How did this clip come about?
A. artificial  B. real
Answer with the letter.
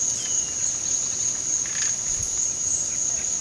B